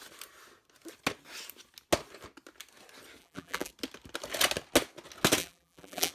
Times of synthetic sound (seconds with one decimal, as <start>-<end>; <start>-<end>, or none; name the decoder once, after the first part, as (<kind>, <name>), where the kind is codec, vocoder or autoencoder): 3.2-3.7 (vocoder, BigVGAN v2); 5.4-6.1